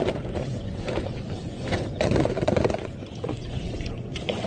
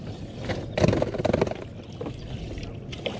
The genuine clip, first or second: second